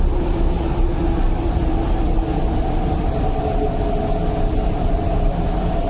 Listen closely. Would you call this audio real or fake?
real